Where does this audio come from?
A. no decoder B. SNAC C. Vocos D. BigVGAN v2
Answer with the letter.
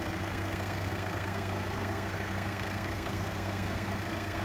B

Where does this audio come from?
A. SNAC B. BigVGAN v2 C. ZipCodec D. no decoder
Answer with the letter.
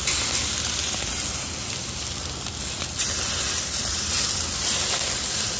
D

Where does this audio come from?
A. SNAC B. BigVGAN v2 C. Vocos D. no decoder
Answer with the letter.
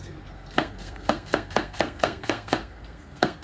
A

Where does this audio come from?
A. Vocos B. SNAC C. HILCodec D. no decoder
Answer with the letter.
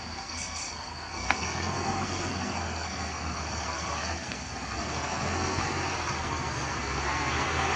B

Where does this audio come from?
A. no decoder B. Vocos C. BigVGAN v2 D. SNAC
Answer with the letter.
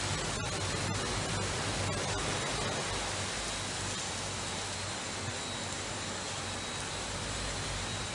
A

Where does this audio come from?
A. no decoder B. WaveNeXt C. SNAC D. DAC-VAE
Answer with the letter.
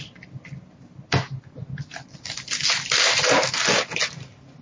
A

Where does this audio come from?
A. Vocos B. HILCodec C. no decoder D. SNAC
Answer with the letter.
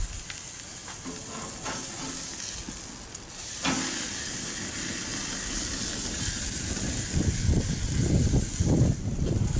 C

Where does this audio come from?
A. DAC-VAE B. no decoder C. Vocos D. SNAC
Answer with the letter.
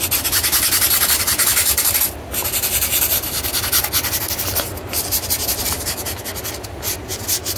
B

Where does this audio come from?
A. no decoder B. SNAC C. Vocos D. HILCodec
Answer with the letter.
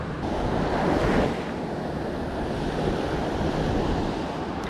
A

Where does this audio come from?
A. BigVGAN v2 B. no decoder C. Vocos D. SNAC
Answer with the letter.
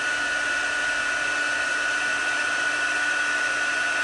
B